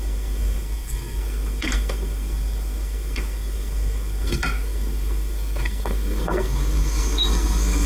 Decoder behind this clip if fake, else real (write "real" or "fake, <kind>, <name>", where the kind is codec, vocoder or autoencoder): fake, codec, SNAC